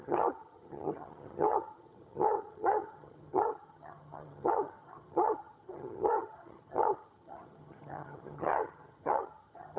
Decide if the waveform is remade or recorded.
remade